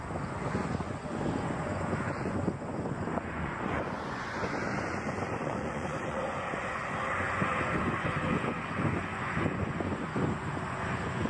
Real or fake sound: fake